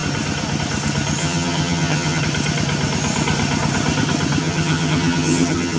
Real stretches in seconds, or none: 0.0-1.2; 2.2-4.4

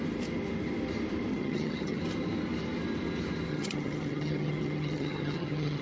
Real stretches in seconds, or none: 0.0-1.3; 2.0-3.5

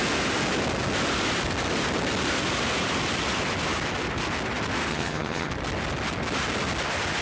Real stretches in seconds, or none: 0.0-4.9; 5.5-7.2

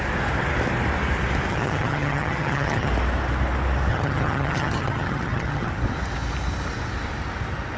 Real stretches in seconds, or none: 0.0-1.5; 2.9-3.9; 5.7-7.8

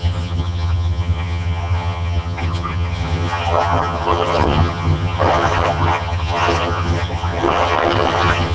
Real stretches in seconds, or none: none